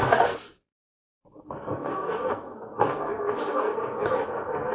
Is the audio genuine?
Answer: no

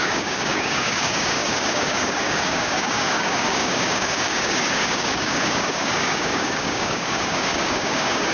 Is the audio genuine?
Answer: no